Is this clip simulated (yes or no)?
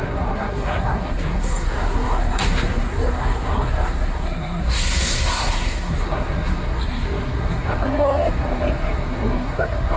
yes